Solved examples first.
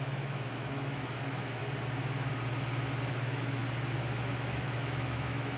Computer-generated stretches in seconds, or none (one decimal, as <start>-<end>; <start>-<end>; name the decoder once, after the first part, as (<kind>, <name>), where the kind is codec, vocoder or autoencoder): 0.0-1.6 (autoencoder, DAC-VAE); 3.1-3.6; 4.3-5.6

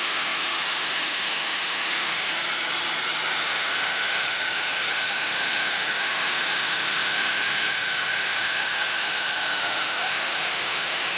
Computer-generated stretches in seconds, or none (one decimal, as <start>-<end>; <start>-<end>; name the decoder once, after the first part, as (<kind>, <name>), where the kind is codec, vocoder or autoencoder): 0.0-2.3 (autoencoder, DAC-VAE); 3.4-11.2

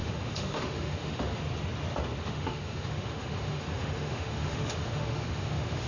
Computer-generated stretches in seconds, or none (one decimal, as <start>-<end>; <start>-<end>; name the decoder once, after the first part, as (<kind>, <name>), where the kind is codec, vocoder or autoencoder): 0.0-1.4 (autoencoder, DAC-VAE); 2.2-5.9